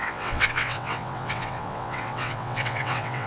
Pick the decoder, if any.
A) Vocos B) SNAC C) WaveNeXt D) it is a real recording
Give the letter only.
C